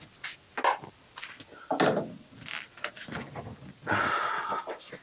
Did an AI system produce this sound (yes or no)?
no